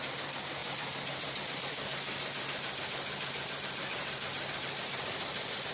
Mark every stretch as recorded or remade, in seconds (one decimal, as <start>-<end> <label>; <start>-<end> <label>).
0.0-1.9 remade; 1.9-3.3 recorded; 3.3-4.0 remade; 4.0-4.5 recorded; 4.5-5.7 remade